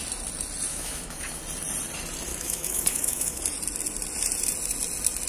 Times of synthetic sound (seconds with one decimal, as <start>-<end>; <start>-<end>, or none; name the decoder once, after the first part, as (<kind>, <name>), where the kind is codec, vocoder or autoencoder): 0.7-1.4 (autoencoder, DAC-VAE); 2.3-3.4